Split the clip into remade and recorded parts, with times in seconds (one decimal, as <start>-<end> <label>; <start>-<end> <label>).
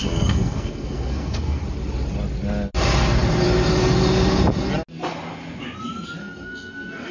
0.0-1.6 remade; 1.6-6.2 recorded; 6.2-7.1 remade